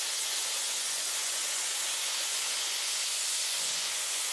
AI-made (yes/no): yes